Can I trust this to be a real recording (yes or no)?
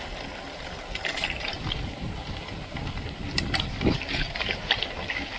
yes